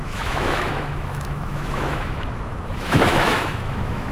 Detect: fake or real fake